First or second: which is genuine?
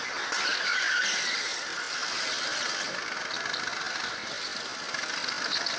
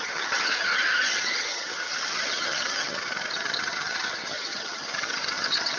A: first